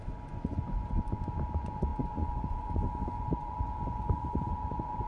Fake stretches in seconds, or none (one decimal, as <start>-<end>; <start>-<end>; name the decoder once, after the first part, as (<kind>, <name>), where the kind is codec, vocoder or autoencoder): 0.0-5.1 (vocoder, Vocos)